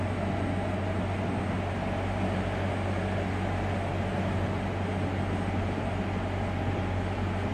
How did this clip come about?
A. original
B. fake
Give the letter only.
A